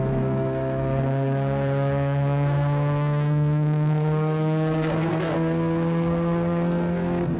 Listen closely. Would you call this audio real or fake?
fake